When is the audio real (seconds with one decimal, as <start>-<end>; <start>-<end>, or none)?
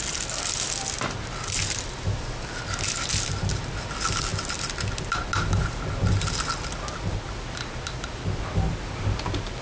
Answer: 0.0-9.6